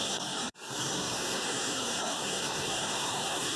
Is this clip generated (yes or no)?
yes